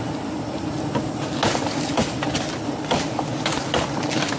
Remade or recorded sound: recorded